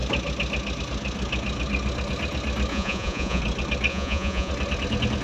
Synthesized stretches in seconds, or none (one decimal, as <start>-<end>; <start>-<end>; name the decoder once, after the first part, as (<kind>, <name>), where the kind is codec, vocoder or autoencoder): 2.7-3.4 (vocoder, Vocos); 3.9-4.5